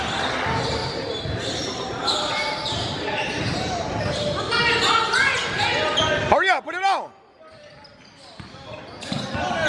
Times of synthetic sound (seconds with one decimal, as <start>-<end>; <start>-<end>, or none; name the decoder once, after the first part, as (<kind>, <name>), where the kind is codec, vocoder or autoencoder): 0.8-4.5 (vocoder, BigVGAN v2)